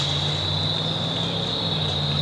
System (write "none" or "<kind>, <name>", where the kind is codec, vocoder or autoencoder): none